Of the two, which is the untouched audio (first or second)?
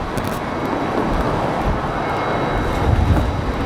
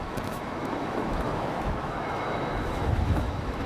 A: first